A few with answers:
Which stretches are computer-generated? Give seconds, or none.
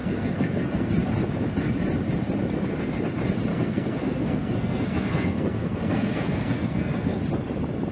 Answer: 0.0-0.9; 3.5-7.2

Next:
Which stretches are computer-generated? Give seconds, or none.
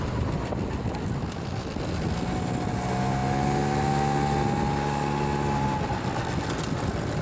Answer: none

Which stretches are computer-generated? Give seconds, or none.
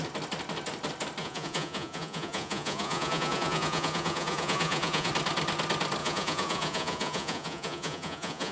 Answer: 1.2-5.1; 6.0-8.5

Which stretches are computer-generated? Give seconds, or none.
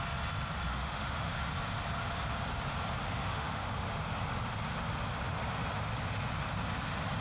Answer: 0.7-1.4; 3.0-3.7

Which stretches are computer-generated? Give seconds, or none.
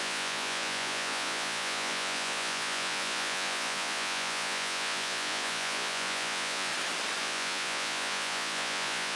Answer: 0.0-6.7; 7.2-9.2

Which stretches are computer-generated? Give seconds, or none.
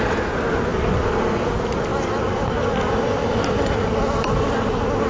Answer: 0.7-1.5; 1.9-5.1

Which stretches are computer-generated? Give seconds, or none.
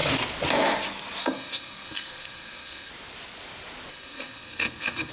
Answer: 1.2-2.9; 3.9-5.1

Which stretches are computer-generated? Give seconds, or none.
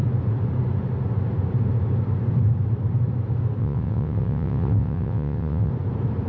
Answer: 3.6-5.7